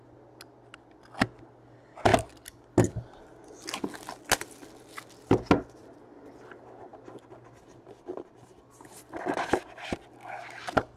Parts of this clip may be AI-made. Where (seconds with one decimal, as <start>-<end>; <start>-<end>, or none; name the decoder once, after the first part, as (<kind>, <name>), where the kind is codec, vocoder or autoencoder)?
none